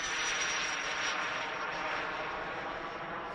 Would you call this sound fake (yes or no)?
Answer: no